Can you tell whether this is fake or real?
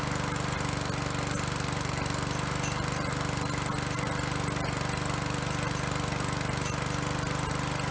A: real